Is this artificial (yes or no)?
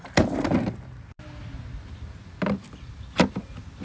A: no